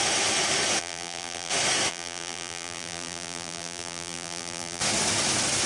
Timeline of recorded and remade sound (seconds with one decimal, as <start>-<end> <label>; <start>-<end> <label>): 0.0-0.8 recorded; 0.8-1.5 remade; 1.5-1.9 recorded; 1.9-4.8 remade; 4.8-5.7 recorded